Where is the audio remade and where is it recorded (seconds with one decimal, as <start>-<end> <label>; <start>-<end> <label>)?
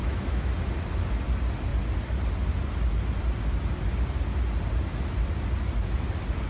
0.0-0.5 remade; 0.5-6.5 recorded